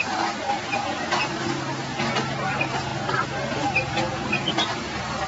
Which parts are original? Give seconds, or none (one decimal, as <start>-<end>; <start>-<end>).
0.0-5.3